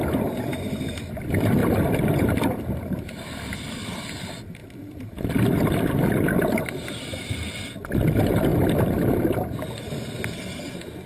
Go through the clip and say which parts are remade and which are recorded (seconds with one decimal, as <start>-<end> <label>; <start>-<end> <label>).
0.0-1.6 recorded; 1.6-3.8 remade; 3.8-4.6 recorded; 4.6-6.6 remade; 6.6-8.5 recorded; 8.5-9.2 remade; 9.2-11.1 recorded